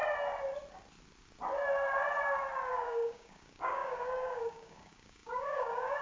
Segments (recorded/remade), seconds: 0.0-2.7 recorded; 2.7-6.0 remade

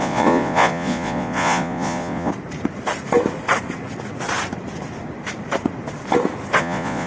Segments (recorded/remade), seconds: 0.0-2.3 remade; 2.3-6.6 recorded; 6.6-7.1 remade

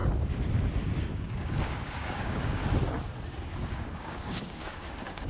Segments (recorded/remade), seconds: 0.0-0.9 recorded; 0.9-2.6 remade; 2.6-3.7 recorded; 3.7-5.3 remade